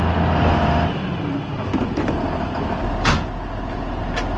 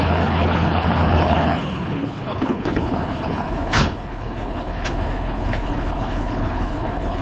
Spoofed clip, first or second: second